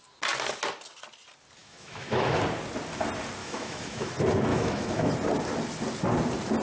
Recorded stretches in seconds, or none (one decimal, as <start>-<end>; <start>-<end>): 0.0-1.6; 2.4-3.4; 4.1-4.5; 5.1-6.6